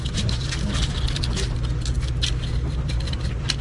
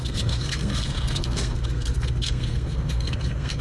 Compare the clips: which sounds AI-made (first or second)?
second